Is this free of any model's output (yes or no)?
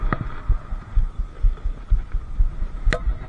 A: yes